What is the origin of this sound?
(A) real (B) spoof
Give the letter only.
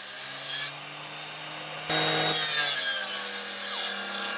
A